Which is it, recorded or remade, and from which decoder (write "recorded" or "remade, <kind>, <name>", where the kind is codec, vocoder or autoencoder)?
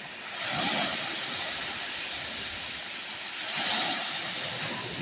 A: recorded